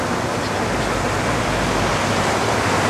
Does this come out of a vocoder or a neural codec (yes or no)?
no